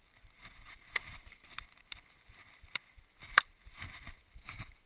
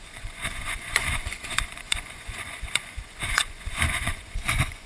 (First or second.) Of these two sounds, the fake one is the second